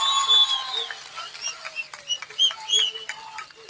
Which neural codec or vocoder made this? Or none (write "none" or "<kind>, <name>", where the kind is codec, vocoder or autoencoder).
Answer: none